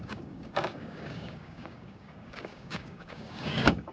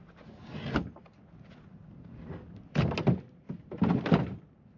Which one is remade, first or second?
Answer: first